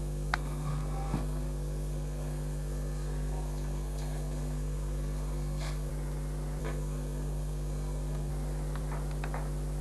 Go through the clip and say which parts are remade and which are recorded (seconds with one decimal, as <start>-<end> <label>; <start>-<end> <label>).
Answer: 0.0-5.9 remade; 5.9-6.6 recorded; 6.6-8.3 remade; 8.3-9.8 recorded